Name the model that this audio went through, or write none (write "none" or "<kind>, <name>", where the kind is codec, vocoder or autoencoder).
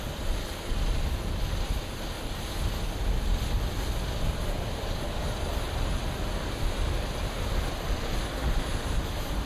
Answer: none